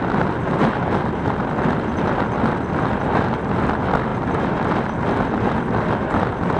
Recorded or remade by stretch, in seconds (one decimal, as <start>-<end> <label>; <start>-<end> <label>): 0.0-6.6 recorded